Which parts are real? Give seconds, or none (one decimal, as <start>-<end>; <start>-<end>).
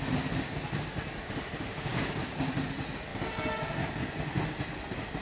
0.0-1.9; 2.5-5.2